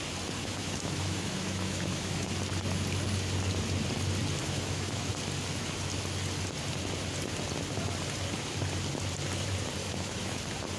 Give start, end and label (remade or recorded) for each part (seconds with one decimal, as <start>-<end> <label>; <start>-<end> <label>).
0.0-0.4 recorded; 0.4-2.3 remade; 2.3-4.4 recorded; 4.4-5.1 remade; 5.1-9.8 recorded; 9.8-10.4 remade; 10.4-10.8 recorded